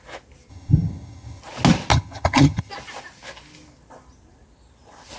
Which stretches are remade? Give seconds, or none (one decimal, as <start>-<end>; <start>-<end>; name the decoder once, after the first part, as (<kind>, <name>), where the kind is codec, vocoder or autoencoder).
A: 0.5-1.4 (vocoder, HiFi-GAN); 1.9-2.7